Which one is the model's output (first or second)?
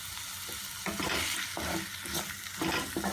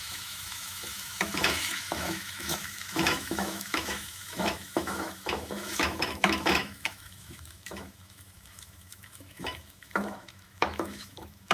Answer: second